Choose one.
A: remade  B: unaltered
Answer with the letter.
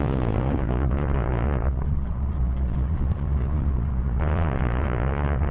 A